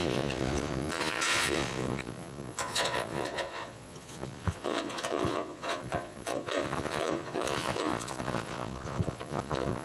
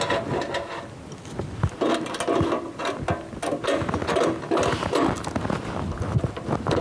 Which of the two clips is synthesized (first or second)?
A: first